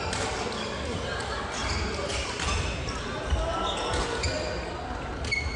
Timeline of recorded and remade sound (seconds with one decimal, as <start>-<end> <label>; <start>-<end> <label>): 0.0-5.6 recorded